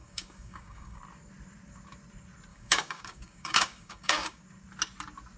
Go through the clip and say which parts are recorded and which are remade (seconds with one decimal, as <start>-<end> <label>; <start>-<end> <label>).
0.0-1.0 remade; 1.0-2.5 recorded; 2.5-4.4 remade; 4.4-5.4 recorded

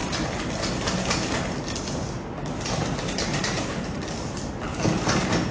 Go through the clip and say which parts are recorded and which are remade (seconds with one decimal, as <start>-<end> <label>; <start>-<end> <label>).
0.0-3.3 recorded; 3.3-4.3 remade; 4.3-5.5 recorded

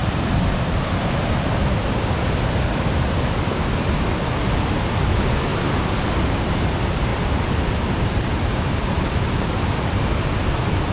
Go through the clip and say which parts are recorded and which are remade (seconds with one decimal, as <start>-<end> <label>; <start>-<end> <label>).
0.0-0.8 remade; 0.8-5.5 recorded; 5.5-6.0 remade; 6.0-7.1 recorded; 7.1-10.0 remade; 10.0-10.9 recorded

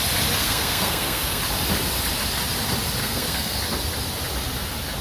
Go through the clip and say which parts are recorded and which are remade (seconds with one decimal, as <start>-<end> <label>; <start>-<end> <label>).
0.0-0.4 recorded; 0.4-1.4 remade; 1.4-3.0 recorded; 3.0-3.6 remade; 3.6-5.0 recorded

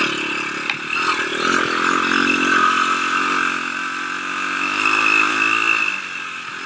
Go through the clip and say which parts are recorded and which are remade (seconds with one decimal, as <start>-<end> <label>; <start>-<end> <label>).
0.0-6.7 recorded

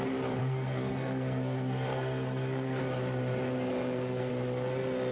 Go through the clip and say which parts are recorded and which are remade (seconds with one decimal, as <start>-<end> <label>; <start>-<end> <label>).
0.0-0.4 recorded; 0.4-2.8 remade; 2.8-3.7 recorded; 3.7-4.3 remade; 4.3-5.1 recorded